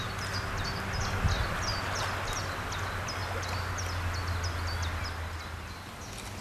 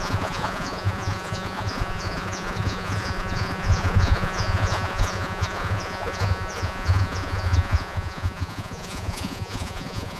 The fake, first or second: second